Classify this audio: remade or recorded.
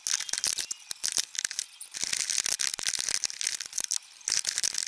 recorded